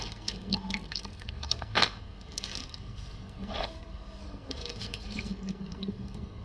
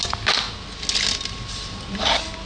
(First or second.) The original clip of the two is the second